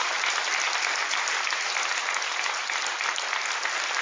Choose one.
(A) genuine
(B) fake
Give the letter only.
A